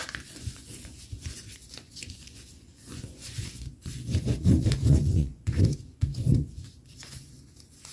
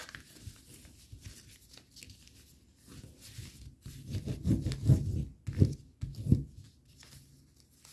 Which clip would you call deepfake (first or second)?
first